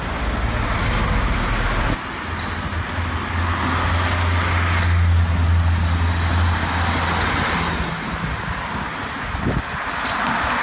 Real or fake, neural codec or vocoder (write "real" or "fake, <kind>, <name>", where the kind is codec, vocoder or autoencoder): real